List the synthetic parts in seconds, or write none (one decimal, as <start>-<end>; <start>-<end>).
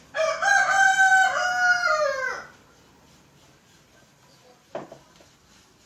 none